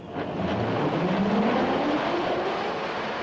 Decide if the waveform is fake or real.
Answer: real